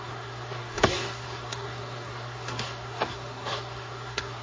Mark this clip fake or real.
fake